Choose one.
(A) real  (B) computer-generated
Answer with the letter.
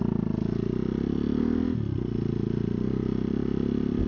A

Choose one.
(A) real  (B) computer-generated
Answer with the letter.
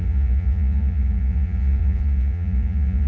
B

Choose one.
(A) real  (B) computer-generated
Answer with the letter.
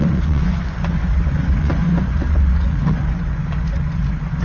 B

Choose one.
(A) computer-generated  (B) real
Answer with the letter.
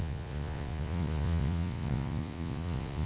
A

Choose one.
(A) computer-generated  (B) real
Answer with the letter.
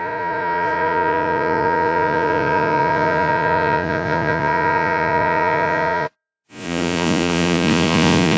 A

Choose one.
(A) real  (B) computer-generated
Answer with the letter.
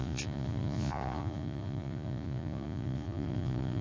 B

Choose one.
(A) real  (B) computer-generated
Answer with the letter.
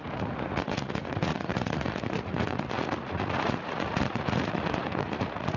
B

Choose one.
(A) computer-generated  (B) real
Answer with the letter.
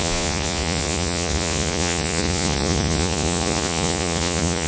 A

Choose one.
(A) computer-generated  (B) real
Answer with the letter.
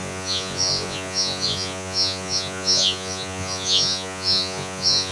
A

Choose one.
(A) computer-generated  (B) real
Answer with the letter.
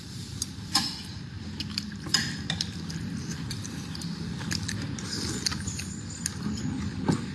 B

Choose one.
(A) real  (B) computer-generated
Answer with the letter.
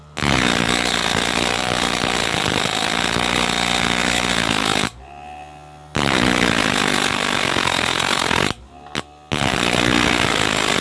A